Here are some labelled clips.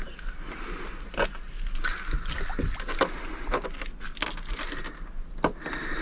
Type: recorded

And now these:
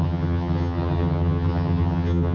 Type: remade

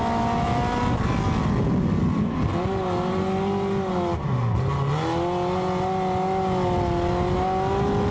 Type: recorded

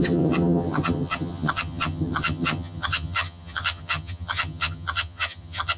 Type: remade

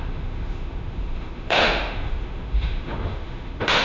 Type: remade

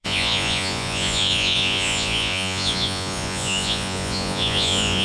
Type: remade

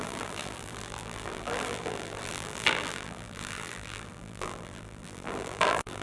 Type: remade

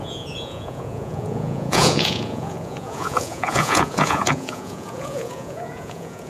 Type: remade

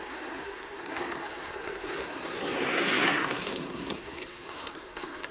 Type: remade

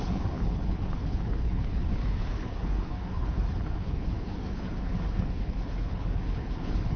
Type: remade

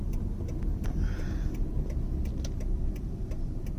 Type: recorded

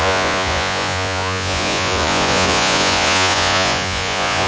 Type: remade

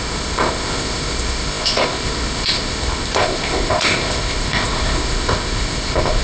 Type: remade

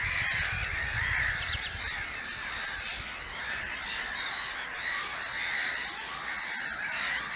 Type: recorded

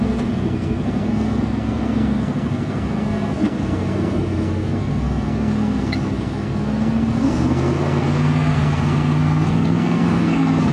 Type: remade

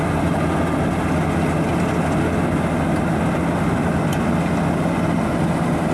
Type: recorded